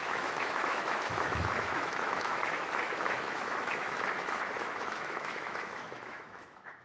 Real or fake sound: fake